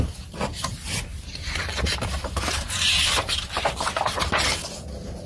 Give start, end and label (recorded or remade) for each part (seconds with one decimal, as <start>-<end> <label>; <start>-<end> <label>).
0.0-1.1 recorded; 1.1-4.3 remade; 4.3-5.3 recorded